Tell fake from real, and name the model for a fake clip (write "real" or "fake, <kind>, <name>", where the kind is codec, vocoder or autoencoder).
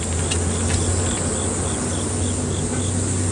real